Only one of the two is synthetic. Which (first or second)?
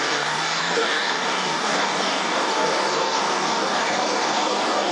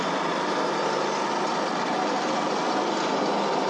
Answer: first